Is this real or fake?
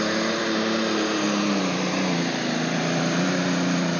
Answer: fake